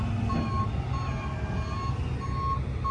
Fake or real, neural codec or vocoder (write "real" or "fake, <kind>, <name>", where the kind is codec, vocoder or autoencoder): real